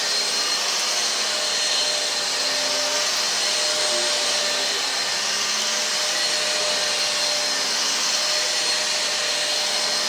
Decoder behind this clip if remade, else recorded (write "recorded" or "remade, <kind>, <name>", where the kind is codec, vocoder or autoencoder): recorded